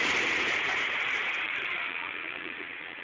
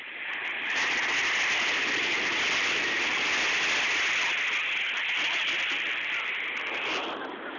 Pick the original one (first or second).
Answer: second